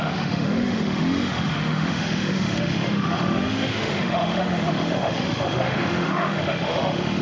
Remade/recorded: remade